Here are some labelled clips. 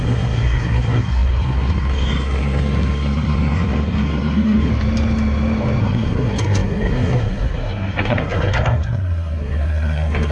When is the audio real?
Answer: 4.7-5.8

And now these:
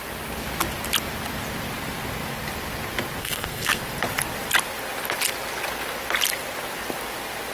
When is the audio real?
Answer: 0.0-3.2; 3.8-7.5